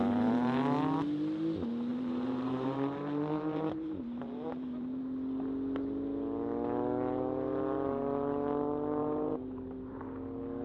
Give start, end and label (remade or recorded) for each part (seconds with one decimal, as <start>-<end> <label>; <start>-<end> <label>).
0.0-1.9 recorded; 1.9-5.0 remade; 5.0-9.0 recorded; 9.0-10.0 remade; 10.0-10.6 recorded